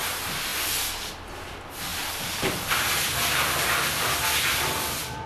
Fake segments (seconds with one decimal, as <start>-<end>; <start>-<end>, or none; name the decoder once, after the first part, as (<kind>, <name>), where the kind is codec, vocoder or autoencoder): 1.9-5.3 (vocoder, BigVGAN v2)